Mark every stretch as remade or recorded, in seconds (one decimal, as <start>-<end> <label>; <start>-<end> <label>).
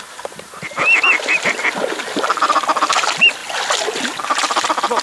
0.0-5.0 recorded